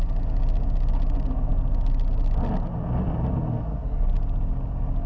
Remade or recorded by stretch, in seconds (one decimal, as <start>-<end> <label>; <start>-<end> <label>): 0.0-5.1 recorded